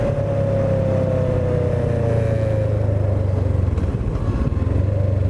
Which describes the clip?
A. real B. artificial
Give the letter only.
A